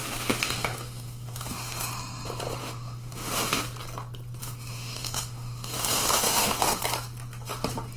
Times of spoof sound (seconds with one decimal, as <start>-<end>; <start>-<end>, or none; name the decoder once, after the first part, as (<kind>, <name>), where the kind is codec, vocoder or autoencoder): 0.0-1.9 (autoencoder, DAC-VAE); 2.6-3.6; 4.4-6.8